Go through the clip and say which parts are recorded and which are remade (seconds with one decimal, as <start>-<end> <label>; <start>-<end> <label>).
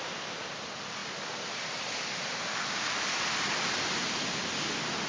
0.0-5.1 recorded